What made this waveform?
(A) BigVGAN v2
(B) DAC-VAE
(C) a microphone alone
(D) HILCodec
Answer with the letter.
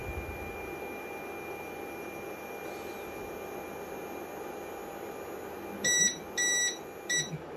C